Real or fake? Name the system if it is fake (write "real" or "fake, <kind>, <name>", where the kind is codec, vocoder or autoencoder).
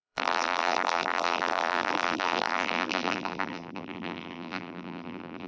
fake, vocoder, BigVGAN v2